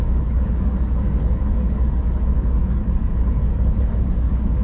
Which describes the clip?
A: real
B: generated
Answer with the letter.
B